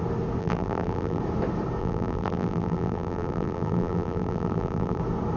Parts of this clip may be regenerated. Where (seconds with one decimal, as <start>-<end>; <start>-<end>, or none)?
0.4-1.2; 1.8-5.0